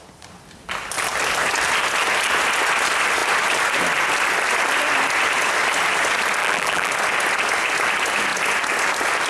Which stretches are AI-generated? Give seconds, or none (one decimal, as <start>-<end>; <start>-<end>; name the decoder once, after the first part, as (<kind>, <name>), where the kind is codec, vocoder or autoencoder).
6.4-6.9 (vocoder, BigVGAN v2)